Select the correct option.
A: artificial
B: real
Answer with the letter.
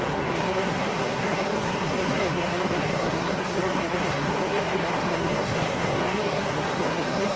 A